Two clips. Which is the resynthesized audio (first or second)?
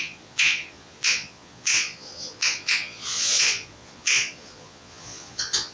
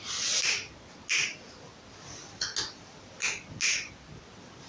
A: first